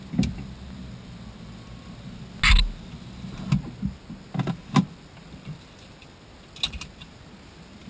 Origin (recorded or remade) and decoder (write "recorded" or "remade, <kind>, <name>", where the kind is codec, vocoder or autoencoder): recorded